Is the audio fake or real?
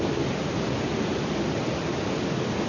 real